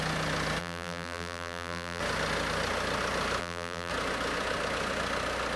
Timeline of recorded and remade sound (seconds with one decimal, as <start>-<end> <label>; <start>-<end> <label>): 0.0-0.6 recorded; 0.6-2.0 remade; 2.0-3.4 recorded; 3.4-3.9 remade; 3.9-5.6 recorded